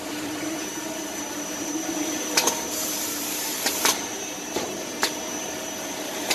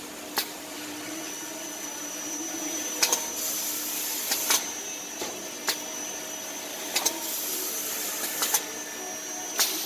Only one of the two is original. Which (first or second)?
second